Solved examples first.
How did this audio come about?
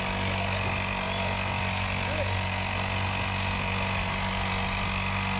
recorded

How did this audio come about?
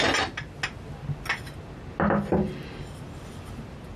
recorded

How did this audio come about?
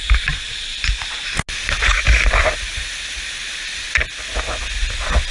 recorded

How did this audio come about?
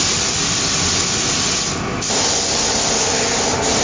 recorded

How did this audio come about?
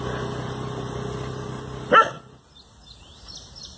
recorded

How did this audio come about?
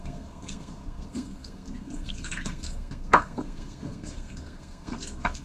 remade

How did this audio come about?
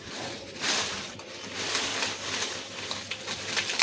recorded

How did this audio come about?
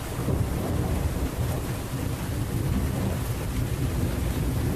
remade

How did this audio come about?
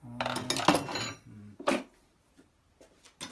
recorded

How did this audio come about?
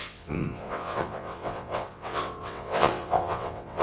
remade